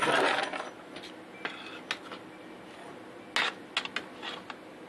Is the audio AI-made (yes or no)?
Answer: no